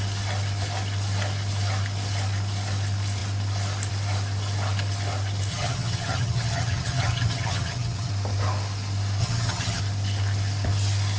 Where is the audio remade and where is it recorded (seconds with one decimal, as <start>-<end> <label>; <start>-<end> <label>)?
0.0-5.5 recorded; 5.5-8.1 remade; 8.1-9.2 recorded; 9.2-9.8 remade; 9.8-11.2 recorded